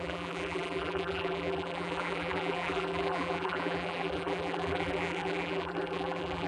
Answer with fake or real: fake